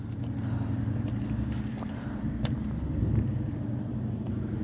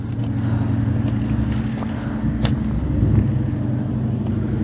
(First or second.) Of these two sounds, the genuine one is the second